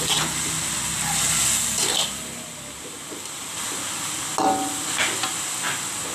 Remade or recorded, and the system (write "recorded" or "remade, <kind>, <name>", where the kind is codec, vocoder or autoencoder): recorded